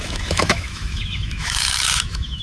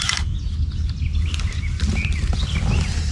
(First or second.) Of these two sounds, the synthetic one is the first